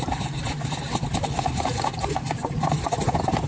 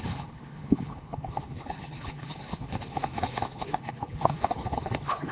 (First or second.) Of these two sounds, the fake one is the second